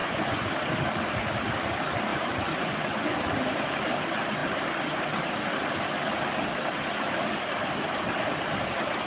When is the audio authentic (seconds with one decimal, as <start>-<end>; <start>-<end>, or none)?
0.5-2.1; 3.2-9.1